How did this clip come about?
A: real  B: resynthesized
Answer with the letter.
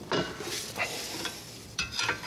B